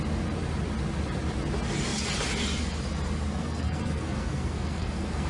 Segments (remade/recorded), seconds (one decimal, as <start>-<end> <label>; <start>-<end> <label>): 0.0-3.3 recorded; 3.3-5.3 remade

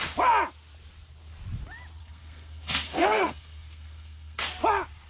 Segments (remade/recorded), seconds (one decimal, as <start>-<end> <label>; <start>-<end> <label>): 0.0-2.0 recorded; 2.0-4.4 remade; 4.4-5.1 recorded

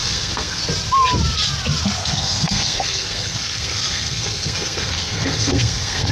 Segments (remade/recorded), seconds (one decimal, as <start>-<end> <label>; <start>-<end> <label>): 0.0-0.6 remade; 0.6-2.0 recorded; 2.0-6.1 remade

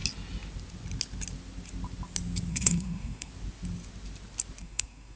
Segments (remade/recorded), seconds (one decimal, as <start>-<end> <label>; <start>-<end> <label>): 0.0-2.5 recorded; 2.5-3.3 remade; 3.3-4.6 recorded; 4.6-5.2 remade